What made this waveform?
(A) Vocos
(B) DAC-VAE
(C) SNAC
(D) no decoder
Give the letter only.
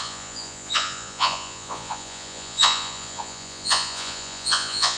A